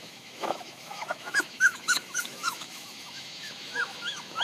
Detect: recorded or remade remade